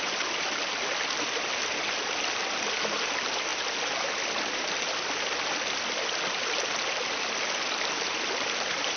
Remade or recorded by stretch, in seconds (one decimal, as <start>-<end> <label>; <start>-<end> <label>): 0.0-9.0 recorded